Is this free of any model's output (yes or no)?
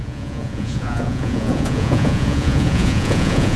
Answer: no